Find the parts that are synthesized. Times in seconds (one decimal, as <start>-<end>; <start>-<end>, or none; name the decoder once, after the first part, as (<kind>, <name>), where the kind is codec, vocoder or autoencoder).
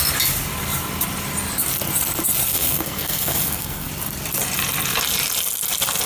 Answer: 2.5-3.9 (codec, SNAC)